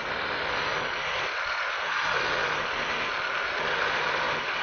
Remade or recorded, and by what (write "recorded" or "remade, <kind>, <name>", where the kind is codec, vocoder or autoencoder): recorded